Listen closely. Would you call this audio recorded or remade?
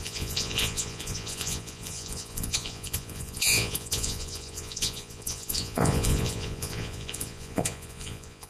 remade